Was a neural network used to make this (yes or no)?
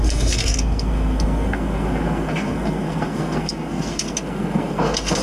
yes